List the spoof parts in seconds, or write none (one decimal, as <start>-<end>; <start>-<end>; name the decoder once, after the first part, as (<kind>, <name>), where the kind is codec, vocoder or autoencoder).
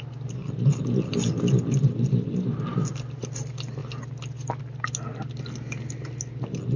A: none